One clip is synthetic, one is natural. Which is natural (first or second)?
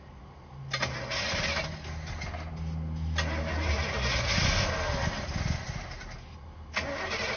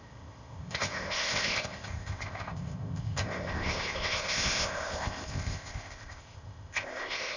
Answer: first